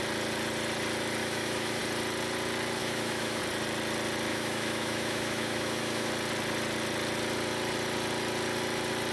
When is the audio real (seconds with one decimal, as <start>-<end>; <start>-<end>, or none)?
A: 0.0-1.2; 1.8-2.8; 3.4-4.3; 6.1-9.1